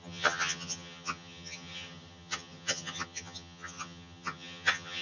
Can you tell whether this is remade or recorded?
remade